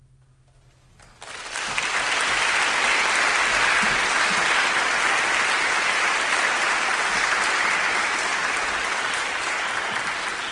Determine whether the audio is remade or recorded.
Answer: recorded